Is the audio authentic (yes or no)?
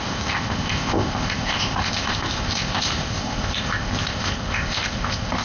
no